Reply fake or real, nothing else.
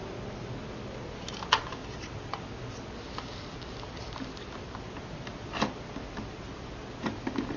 real